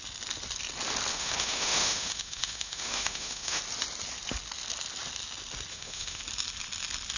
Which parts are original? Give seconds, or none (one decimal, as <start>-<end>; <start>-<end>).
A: 0.0-1.1; 3.6-5.7; 6.2-7.2